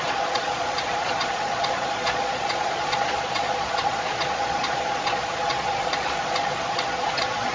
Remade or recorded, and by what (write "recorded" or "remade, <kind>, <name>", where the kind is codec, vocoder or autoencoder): remade, vocoder, Vocos